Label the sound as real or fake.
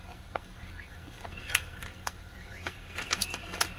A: fake